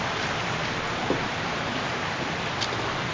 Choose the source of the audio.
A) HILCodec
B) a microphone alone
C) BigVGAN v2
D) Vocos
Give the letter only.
C